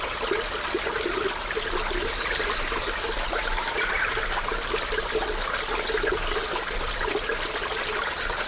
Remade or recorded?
recorded